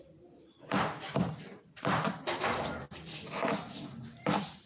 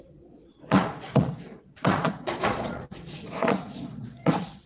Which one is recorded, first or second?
first